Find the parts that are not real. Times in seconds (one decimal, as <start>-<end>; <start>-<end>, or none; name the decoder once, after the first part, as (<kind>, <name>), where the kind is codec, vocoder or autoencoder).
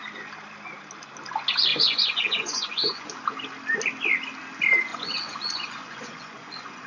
1.7-3.1 (vocoder, Vocos); 4.9-6.9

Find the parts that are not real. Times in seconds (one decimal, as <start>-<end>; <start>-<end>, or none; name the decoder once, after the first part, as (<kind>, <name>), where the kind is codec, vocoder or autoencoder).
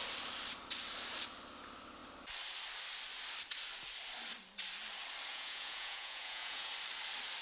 5.3-6.7 (vocoder, Vocos)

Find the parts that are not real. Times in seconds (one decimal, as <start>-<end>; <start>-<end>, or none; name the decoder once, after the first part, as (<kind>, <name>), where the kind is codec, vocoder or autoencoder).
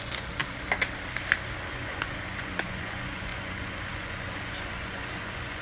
0.0-0.4 (vocoder, Vocos); 1.7-5.6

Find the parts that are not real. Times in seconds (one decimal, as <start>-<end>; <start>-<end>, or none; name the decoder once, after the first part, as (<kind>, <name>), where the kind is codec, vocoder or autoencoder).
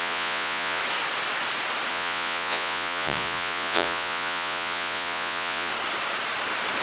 0.0-0.8 (vocoder, Vocos); 1.9-5.7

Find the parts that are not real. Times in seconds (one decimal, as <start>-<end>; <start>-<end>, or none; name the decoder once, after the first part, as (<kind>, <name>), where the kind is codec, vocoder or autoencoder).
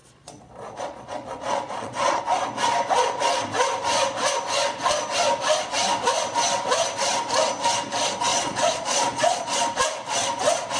0.0-2.2 (vocoder, Vocos); 8.3-9.6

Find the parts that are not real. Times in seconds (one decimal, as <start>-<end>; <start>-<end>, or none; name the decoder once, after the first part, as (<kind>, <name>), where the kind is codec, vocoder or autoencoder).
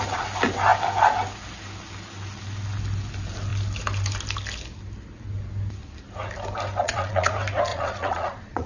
6.8-7.3 (vocoder, Vocos); 7.7-8.7